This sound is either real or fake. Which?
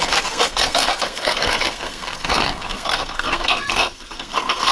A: fake